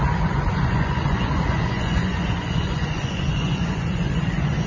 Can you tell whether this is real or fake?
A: fake